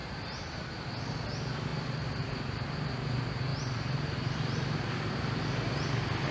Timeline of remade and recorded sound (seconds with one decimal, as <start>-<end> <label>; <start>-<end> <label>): 0.0-0.6 remade; 0.6-1.7 recorded; 1.7-2.9 remade; 2.9-3.5 recorded; 3.5-5.7 remade; 5.7-6.3 recorded